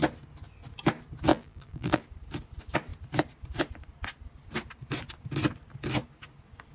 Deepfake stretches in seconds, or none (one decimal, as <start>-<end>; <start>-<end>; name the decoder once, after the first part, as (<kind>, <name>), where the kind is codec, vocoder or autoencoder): 1.3-2.0 (vocoder, BigVGAN v2)